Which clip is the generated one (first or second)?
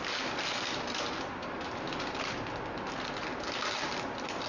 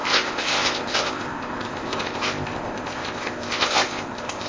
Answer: second